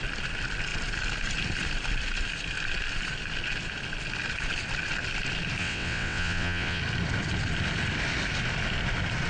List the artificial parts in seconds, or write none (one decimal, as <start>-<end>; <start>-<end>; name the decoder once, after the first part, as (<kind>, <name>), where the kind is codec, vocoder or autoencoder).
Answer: 5.6-6.8 (vocoder, WaveNeXt)